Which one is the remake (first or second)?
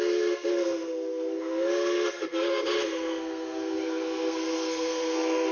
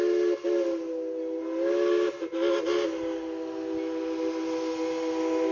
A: first